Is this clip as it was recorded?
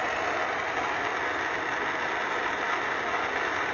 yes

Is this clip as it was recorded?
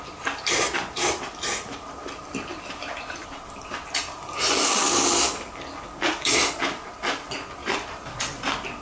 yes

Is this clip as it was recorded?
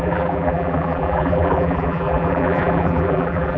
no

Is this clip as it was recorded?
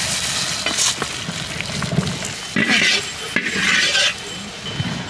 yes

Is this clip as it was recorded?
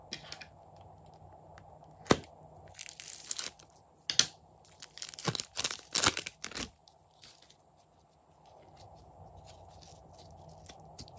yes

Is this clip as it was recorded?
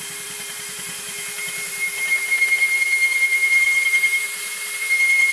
no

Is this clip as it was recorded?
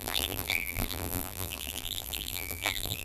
no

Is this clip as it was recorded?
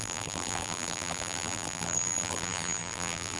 no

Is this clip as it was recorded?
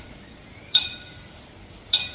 no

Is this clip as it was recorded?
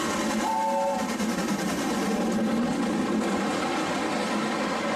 yes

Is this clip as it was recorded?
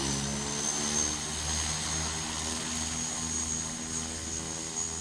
yes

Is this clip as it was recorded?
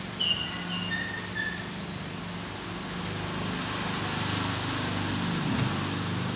yes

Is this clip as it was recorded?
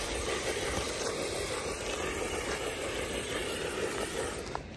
yes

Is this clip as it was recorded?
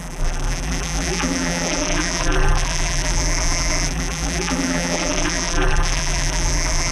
no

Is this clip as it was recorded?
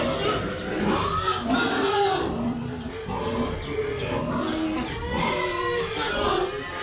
yes